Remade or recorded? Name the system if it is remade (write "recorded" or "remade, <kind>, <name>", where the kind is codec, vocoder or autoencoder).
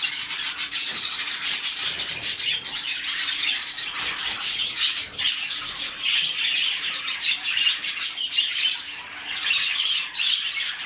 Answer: remade, vocoder, BigVGAN v2